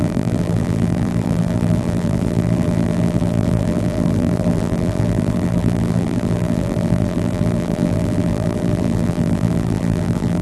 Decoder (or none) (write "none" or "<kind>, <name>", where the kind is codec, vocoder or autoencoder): vocoder, BigVGAN v2